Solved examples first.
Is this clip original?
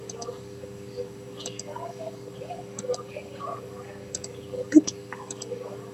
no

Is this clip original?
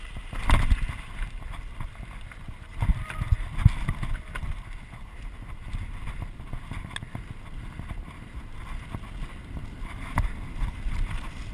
yes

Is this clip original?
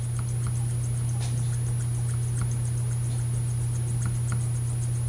yes